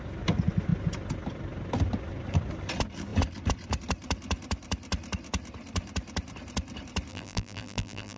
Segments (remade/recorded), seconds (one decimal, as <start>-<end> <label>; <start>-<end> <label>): 0.0-7.1 recorded; 7.1-8.2 remade

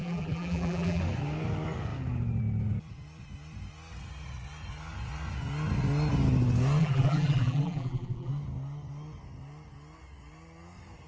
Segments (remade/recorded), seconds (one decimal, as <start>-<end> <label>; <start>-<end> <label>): 0.0-1.0 remade; 1.0-6.8 recorded; 6.8-8.3 remade; 8.3-11.1 recorded

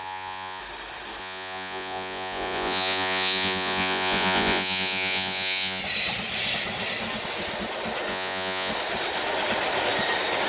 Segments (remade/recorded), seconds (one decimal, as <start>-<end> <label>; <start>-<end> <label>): 0.0-0.6 remade; 0.6-1.2 recorded; 1.2-5.8 remade; 5.8-8.1 recorded; 8.1-8.7 remade; 8.7-10.5 recorded